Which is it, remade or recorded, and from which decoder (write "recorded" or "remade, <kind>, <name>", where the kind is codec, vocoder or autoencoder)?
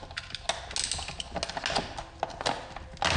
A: recorded